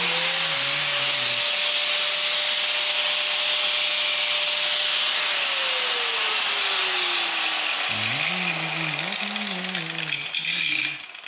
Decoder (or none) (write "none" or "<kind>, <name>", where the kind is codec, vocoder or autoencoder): none